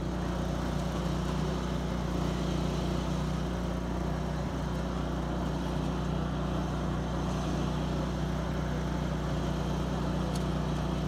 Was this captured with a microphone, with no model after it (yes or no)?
yes